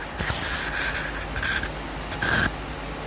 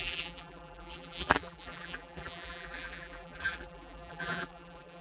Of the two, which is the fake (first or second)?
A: second